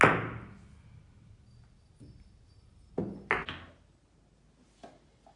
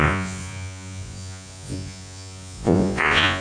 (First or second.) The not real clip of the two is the second